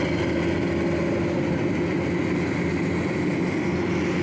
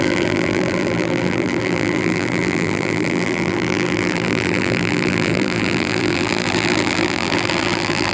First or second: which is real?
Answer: first